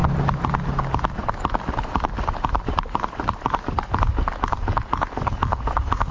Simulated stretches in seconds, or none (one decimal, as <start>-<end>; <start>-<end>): none